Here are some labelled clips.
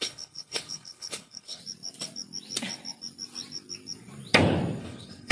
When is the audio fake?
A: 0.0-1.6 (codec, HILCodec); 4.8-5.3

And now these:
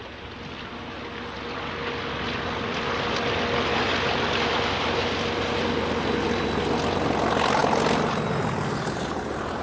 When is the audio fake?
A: none

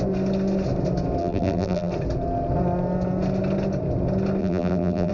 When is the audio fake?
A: 1.2-1.9 (vocoder, BigVGAN v2); 4.4-5.1

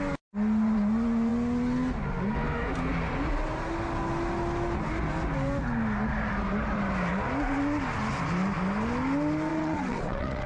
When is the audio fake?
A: 9.5-10.5 (vocoder, WaveNeXt)

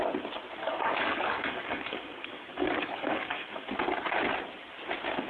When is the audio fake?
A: 0.6-3.7 (codec, DAC)